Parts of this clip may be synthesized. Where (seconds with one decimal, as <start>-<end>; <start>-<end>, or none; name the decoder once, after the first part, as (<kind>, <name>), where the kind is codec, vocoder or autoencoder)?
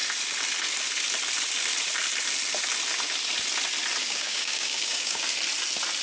4.0-5.2 (codec, DAC)